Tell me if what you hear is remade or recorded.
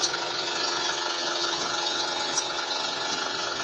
remade